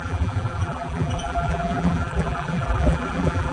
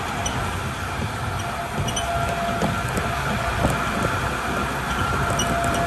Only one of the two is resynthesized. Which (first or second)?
first